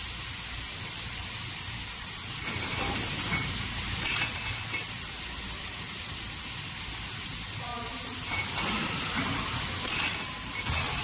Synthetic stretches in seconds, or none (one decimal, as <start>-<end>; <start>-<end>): none